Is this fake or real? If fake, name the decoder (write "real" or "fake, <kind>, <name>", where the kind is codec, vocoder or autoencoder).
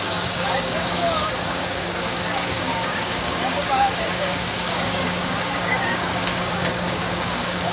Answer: fake, codec, DAC